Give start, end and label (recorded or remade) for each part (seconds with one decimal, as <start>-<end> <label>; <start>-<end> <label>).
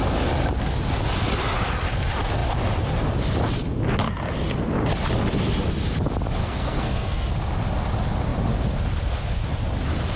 0.0-6.4 recorded; 6.4-7.3 remade; 7.3-10.2 recorded